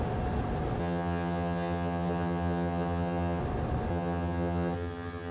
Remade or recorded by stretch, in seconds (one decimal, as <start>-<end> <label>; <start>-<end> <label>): 0.0-0.8 recorded; 0.8-3.4 remade; 3.4-3.9 recorded; 3.9-5.3 remade